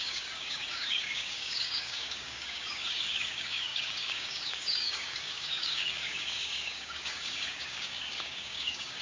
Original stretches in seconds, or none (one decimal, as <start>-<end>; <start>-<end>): none